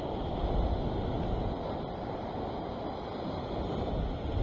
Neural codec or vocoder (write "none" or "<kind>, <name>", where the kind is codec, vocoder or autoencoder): none